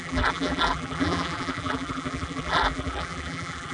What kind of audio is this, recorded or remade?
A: remade